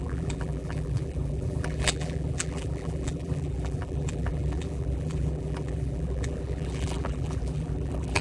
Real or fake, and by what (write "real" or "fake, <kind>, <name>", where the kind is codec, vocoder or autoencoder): fake, vocoder, BigVGAN v2